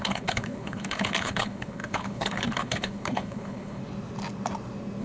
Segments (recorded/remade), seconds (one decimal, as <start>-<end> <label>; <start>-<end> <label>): 0.0-3.8 remade; 3.8-5.0 recorded